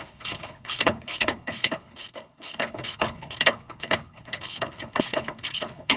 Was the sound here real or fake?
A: fake